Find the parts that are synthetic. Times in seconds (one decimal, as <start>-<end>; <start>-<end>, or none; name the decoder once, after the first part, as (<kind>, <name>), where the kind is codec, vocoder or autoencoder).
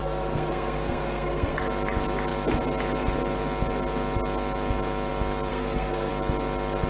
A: 0.0-1.6 (codec, SNAC); 5.5-6.1